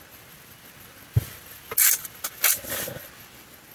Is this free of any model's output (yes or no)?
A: yes